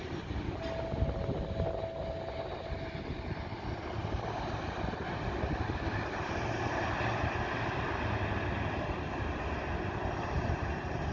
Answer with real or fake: real